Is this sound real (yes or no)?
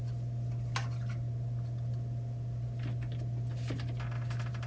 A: yes